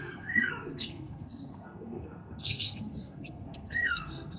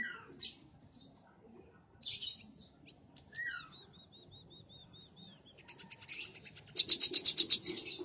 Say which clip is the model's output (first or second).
first